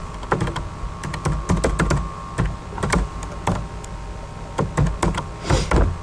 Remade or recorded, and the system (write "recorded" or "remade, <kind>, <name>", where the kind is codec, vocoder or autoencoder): recorded